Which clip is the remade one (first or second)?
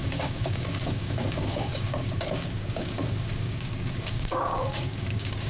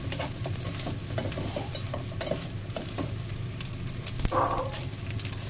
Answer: first